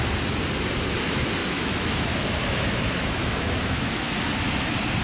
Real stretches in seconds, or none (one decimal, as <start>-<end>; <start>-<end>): 0.0-1.4; 4.1-5.0